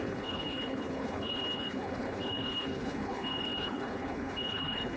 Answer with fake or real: fake